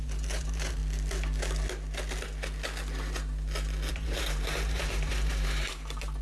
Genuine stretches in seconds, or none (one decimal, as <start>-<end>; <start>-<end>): 0.8-3.9